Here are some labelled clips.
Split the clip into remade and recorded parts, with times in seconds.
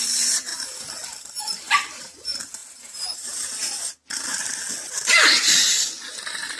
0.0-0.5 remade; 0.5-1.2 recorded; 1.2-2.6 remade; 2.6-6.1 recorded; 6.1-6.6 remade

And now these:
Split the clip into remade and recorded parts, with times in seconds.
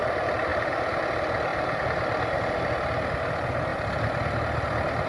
0.0-0.5 recorded; 0.5-1.0 remade; 1.0-1.5 recorded; 1.5-2.7 remade; 2.7-5.1 recorded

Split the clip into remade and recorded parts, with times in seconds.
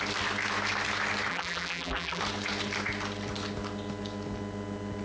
0.0-1.3 recorded; 1.3-2.2 remade; 2.2-5.0 recorded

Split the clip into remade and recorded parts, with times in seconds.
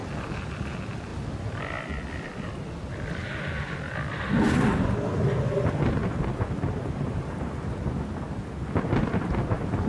0.0-9.9 recorded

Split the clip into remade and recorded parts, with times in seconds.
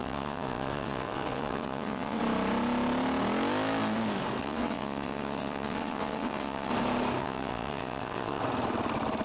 0.0-2.2 remade; 2.2-4.4 recorded; 4.4-6.7 remade; 6.7-7.2 recorded; 7.2-8.4 remade; 8.4-9.2 recorded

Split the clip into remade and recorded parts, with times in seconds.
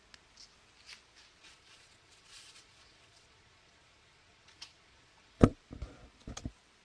0.0-1.4 recorded; 1.4-5.5 remade; 5.5-6.8 recorded